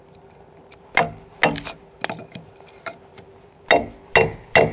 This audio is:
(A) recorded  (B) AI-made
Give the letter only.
A